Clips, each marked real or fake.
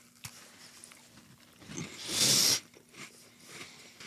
real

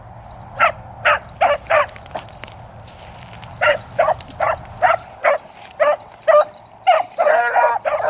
real